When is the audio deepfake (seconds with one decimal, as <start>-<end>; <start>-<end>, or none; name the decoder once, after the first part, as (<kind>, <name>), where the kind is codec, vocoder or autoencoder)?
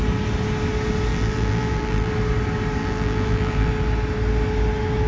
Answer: 1.1-2.1 (vocoder, BigVGAN v2); 2.8-3.7